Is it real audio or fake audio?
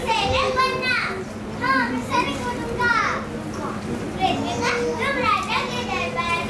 real